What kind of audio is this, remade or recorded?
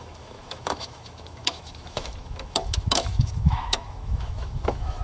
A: remade